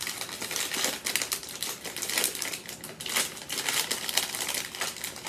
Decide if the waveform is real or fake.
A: real